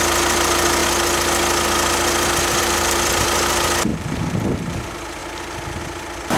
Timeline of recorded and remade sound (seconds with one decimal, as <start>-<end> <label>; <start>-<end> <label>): 0.0-3.9 recorded; 3.9-4.8 remade; 4.8-6.4 recorded